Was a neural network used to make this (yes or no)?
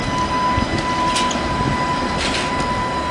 no